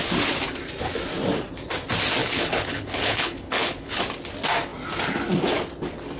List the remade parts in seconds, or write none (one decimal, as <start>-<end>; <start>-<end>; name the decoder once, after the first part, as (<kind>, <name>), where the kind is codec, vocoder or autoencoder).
2.2-4.0 (codec, HILCodec)